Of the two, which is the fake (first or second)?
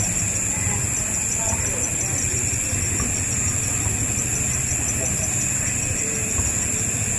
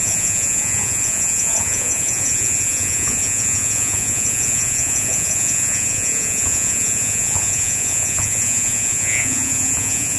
second